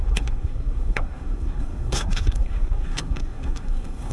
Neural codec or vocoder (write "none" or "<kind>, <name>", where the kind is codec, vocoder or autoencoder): codec, SNAC